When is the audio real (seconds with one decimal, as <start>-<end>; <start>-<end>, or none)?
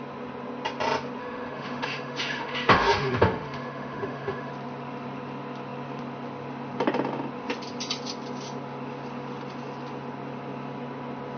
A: 0.0-1.2; 4.5-11.4